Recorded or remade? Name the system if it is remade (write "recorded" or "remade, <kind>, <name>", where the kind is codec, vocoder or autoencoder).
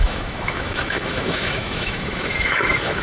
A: remade, autoencoder, DAC-VAE